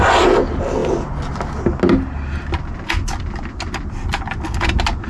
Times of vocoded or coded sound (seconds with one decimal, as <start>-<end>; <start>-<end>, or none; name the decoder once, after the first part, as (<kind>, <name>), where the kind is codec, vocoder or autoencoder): none